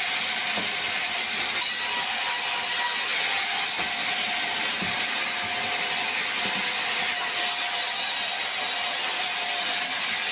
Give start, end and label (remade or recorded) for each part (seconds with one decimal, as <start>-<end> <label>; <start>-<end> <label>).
0.0-10.3 recorded